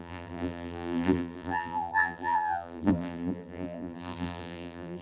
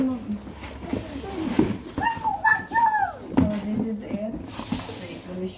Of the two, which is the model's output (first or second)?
first